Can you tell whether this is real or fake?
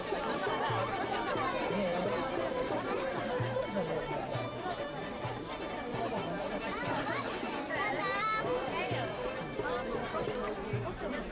fake